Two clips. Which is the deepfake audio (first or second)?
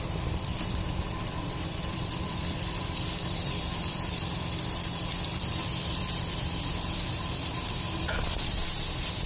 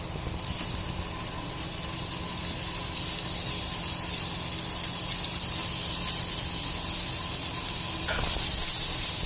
first